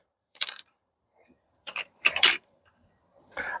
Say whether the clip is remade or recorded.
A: remade